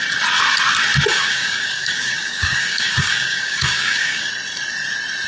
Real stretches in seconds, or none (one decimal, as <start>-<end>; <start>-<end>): 0.0-1.1; 4.3-5.3